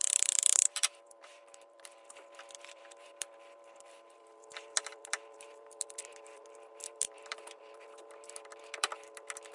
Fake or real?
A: fake